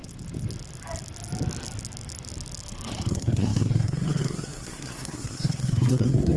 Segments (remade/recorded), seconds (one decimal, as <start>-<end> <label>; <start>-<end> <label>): 0.0-3.1 recorded; 3.1-6.4 remade